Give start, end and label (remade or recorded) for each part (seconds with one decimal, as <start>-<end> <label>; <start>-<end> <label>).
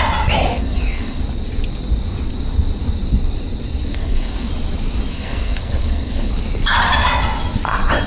0.0-0.5 recorded; 0.5-1.2 remade; 1.2-3.9 recorded; 3.9-4.5 remade; 4.5-5.1 recorded; 5.1-6.3 remade; 6.3-8.1 recorded